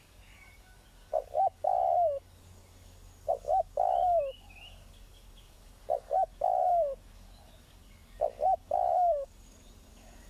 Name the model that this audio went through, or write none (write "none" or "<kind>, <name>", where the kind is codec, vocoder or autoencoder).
codec, DAC